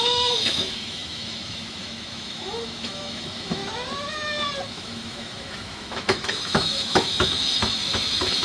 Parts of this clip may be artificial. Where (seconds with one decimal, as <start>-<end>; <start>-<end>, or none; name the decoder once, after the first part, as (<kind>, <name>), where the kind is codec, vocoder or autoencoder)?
0.0-3.6 (autoencoder, DAC-VAE); 4.7-8.4